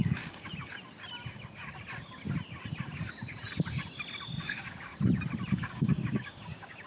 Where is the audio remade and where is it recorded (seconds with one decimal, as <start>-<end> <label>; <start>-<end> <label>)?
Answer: 0.0-0.5 remade; 0.5-4.4 recorded; 4.4-4.9 remade; 4.9-5.5 recorded; 5.5-6.9 remade

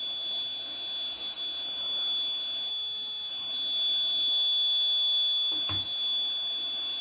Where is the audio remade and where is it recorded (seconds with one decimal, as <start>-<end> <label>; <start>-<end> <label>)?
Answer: 0.0-2.7 recorded; 2.7-3.3 remade; 3.3-4.3 recorded; 4.3-5.5 remade; 5.5-7.0 recorded